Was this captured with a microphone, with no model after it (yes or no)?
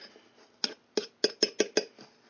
yes